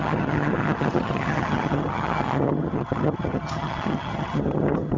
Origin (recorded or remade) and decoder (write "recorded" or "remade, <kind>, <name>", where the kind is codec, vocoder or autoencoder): remade, vocoder, HiFi-GAN